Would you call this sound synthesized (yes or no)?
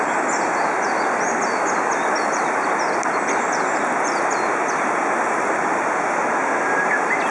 no